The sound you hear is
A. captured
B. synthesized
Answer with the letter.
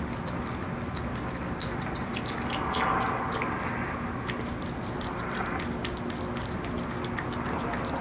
A